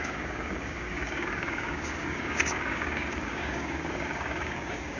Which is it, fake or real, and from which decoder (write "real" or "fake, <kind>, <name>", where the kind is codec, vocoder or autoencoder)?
fake, codec, DAC